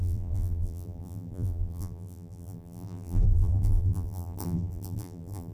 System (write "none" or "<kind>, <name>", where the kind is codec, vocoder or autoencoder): vocoder, BigVGAN v2